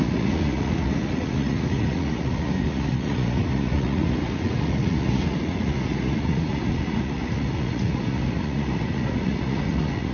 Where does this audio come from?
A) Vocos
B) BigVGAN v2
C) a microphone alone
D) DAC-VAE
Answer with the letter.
A